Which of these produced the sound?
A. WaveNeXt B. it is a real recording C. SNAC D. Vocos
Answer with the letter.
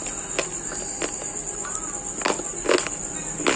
B